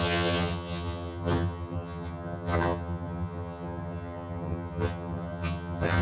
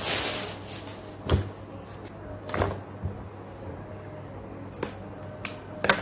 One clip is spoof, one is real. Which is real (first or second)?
second